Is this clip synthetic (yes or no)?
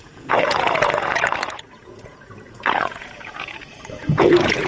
yes